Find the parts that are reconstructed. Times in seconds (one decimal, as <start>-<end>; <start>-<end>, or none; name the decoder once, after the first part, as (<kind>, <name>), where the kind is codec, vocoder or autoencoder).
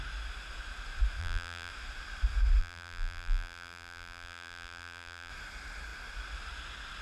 1.2-1.7 (vocoder, BigVGAN v2); 2.6-5.3